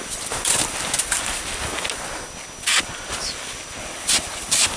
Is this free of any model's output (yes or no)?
yes